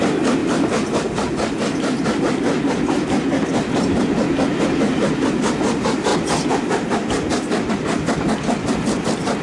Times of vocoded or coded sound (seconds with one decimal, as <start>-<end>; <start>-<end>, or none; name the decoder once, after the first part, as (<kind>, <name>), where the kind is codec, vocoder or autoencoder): none